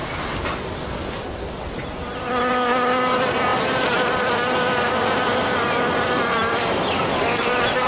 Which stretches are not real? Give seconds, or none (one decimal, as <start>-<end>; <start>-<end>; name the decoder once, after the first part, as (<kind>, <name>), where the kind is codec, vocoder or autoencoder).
none